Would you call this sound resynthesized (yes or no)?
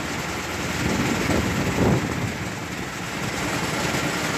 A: no